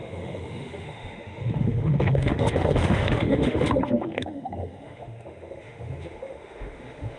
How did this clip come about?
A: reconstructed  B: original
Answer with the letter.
A